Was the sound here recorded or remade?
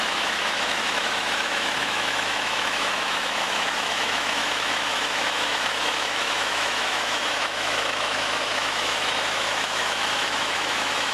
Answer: remade